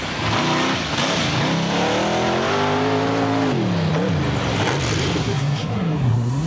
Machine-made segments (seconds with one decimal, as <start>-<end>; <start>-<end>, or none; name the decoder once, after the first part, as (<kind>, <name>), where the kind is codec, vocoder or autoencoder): 5.2-6.5 (codec, SNAC)